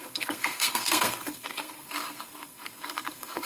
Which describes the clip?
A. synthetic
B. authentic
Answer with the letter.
A